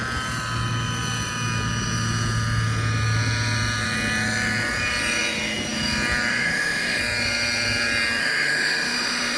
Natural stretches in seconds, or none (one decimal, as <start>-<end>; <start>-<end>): 0.0-6.3; 7.0-8.2